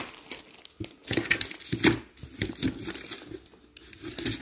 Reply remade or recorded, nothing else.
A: recorded